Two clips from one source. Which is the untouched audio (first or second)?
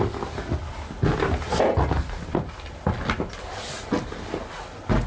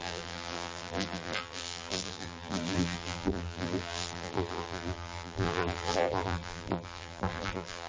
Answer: first